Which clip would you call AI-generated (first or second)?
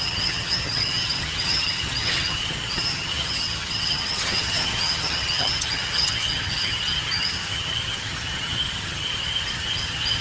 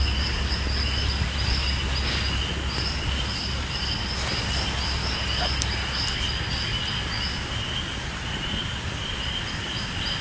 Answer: first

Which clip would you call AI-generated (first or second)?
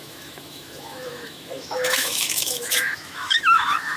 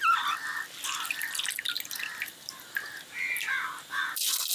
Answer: first